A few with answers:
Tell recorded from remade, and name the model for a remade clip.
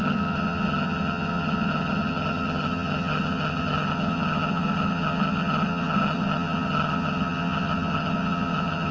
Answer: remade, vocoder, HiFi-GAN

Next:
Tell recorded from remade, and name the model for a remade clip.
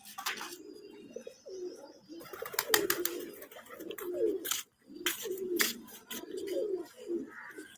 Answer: recorded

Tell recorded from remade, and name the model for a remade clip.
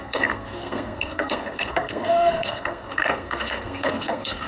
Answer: remade, codec, SNAC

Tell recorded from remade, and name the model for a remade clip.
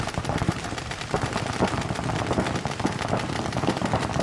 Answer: recorded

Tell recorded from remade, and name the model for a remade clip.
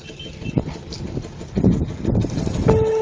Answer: recorded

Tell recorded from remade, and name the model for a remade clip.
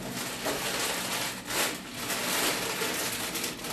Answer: recorded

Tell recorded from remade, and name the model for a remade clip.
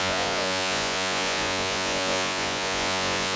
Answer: remade, vocoder, Vocos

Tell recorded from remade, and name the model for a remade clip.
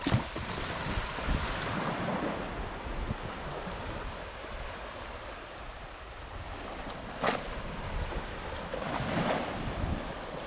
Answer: remade, vocoder, BigVGAN v2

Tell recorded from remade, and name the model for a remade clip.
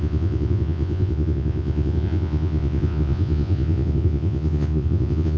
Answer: remade, vocoder, Vocos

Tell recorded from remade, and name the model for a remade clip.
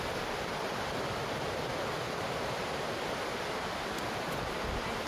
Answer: recorded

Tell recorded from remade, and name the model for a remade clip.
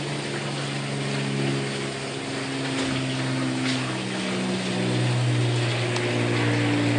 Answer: recorded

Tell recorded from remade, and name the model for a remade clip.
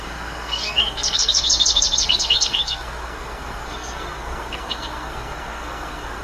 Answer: remade, codec, SNAC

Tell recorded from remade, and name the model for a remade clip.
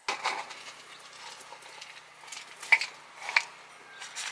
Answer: recorded